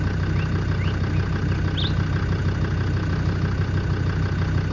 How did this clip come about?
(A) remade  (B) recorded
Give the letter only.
B